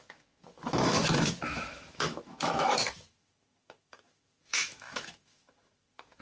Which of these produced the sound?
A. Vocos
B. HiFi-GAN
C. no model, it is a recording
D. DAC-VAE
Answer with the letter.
D